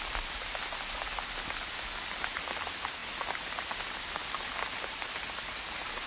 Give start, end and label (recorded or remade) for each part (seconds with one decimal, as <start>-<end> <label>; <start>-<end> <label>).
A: 0.0-6.1 recorded